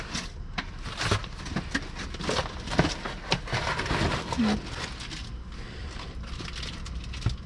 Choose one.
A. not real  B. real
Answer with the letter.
B